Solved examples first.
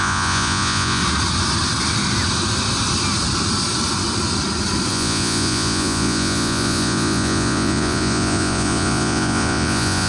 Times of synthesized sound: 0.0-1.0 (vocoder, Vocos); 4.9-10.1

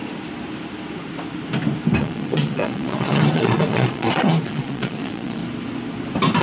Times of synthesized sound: 2.0-5.4 (vocoder, Vocos)

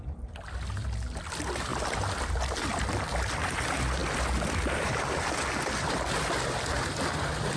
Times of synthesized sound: none

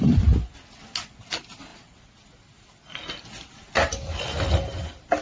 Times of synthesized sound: none

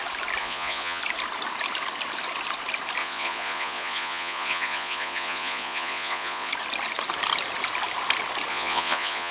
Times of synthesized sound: 0.4-1.0 (vocoder, Vocos); 3.0-6.5; 8.5-9.3

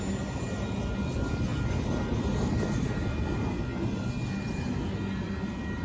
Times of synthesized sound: none

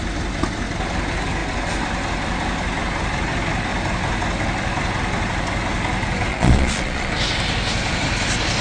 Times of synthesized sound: 6.3-7.1 (vocoder, Vocos)

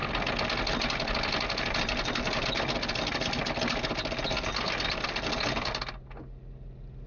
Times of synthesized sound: none